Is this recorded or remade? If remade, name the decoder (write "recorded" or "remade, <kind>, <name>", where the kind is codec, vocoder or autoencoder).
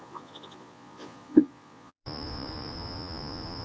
remade, vocoder, Vocos